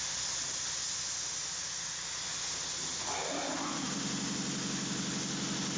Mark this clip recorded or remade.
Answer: recorded